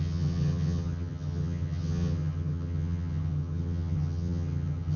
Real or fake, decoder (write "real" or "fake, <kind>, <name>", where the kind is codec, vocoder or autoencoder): fake, vocoder, HiFi-GAN